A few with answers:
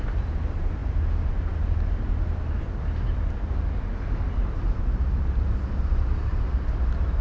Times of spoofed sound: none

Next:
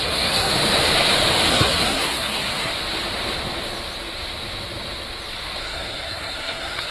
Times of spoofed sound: 0.0-0.5; 1.5-2.7; 5.6-6.9

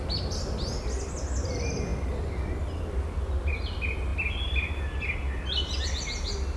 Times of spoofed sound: none

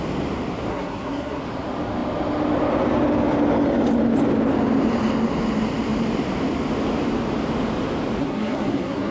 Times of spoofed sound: 0.7-1.4; 8.2-9.1

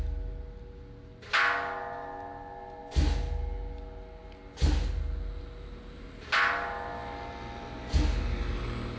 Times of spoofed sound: none

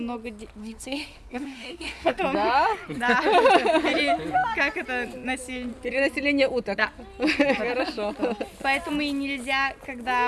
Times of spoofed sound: 0.6-2.2

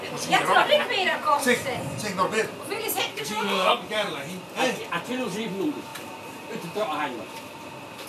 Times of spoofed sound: 3.1-3.8